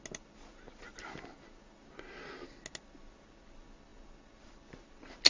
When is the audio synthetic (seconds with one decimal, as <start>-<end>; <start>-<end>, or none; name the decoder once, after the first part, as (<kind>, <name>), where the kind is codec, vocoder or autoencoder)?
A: none